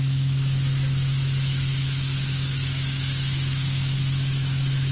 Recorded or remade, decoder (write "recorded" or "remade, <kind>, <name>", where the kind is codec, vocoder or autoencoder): remade, autoencoder, DAC-VAE